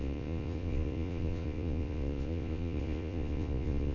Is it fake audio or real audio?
fake